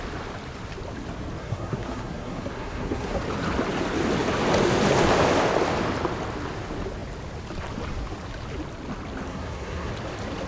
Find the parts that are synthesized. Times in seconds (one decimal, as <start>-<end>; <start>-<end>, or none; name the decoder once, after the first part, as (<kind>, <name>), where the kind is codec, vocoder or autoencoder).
1.4-3.2 (codec, SNAC); 9.3-9.9